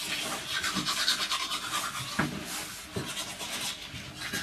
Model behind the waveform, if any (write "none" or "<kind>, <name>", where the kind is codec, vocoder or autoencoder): none